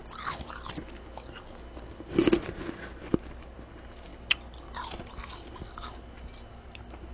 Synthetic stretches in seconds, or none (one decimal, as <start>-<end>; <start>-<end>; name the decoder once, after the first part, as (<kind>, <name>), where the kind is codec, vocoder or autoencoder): none